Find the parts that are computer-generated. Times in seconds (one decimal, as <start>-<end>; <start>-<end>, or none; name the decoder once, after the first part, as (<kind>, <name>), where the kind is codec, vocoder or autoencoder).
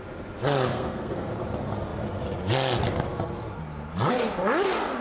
0.7-1.3 (codec, SNAC)